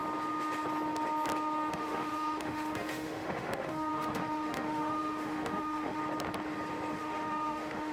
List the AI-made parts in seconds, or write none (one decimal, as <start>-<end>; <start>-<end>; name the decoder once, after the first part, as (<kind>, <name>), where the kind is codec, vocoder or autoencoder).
1.7-6.0 (autoencoder, DAC-VAE); 6.9-7.9